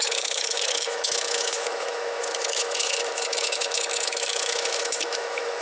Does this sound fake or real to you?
fake